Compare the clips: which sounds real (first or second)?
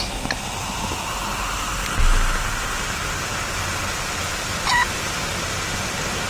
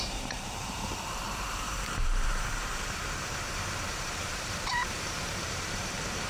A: first